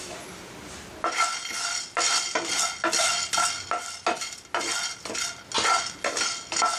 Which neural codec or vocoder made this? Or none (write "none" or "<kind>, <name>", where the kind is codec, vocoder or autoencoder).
none